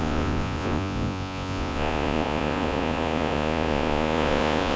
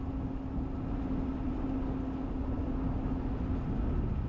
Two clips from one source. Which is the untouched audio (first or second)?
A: second